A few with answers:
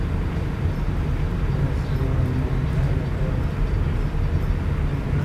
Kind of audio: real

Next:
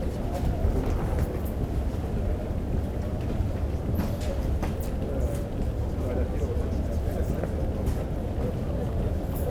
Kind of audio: real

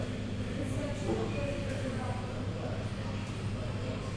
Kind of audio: real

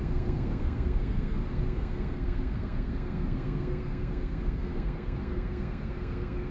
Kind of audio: fake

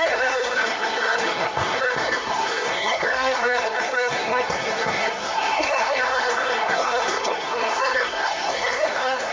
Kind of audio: fake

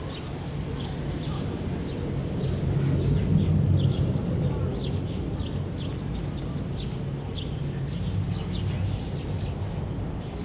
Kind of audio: real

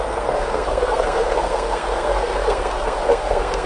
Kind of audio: fake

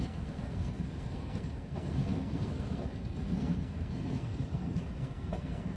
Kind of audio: fake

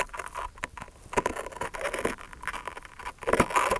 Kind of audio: real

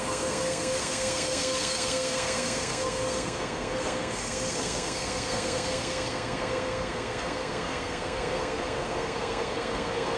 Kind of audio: fake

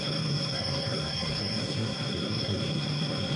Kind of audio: fake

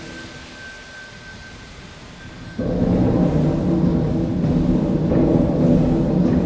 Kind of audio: real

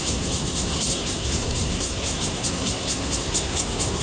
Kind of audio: fake